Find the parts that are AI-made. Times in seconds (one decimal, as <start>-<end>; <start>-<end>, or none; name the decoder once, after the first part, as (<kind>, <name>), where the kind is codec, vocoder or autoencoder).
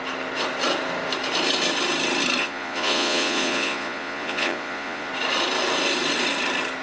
2.4-5.1 (vocoder, Vocos)